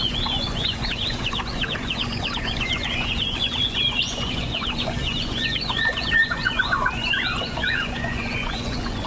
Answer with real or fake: fake